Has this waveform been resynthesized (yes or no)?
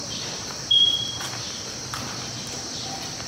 yes